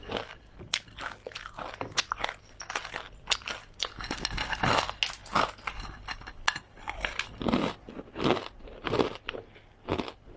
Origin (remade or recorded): recorded